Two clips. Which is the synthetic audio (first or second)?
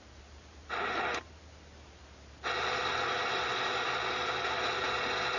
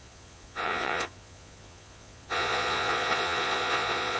second